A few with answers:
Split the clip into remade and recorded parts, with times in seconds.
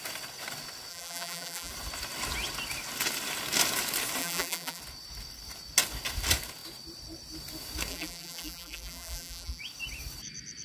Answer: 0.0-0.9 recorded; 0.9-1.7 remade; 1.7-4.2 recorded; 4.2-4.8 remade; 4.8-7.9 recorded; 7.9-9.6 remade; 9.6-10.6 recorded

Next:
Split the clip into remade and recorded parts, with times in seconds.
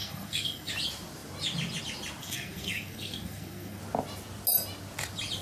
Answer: 0.0-0.7 remade; 0.7-2.2 recorded; 2.2-3.8 remade; 3.8-5.4 recorded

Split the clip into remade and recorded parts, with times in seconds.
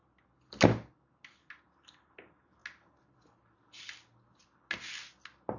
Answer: 0.0-5.6 recorded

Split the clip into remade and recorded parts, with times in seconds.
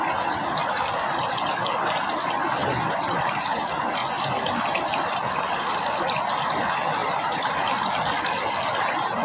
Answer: 0.0-0.6 recorded; 0.6-1.3 remade; 1.3-4.0 recorded; 4.0-6.1 remade; 6.1-7.0 recorded; 7.0-7.5 remade; 7.5-9.2 recorded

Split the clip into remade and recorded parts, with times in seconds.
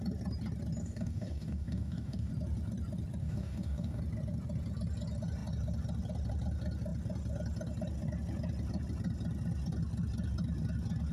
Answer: 0.0-0.8 recorded; 0.8-2.3 remade; 2.3-3.2 recorded; 3.2-4.0 remade; 4.0-11.1 recorded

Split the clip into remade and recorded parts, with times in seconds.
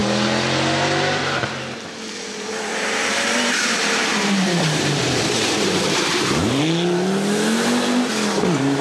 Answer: 0.0-2.7 recorded; 2.7-6.6 remade; 6.6-8.8 recorded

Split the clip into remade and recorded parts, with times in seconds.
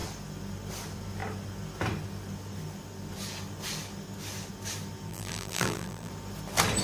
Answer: 0.0-5.1 recorded; 5.1-6.1 remade; 6.1-6.8 recorded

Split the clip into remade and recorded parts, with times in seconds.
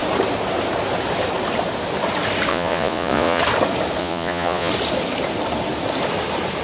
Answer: 0.0-2.5 recorded; 2.5-3.4 remade; 3.4-4.0 recorded; 4.0-4.7 remade; 4.7-6.6 recorded